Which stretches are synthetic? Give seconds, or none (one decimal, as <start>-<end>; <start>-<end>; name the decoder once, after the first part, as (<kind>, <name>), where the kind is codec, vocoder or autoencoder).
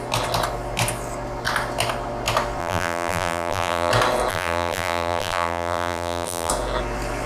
2.6-3.9 (vocoder, BigVGAN v2); 4.3-6.5